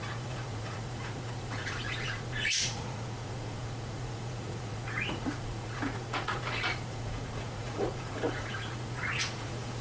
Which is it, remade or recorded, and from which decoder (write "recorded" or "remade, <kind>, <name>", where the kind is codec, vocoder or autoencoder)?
remade, vocoder, Vocos